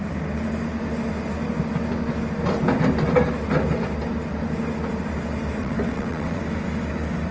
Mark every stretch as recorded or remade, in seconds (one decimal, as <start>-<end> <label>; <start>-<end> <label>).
0.0-5.6 recorded; 5.6-6.4 remade; 6.4-7.3 recorded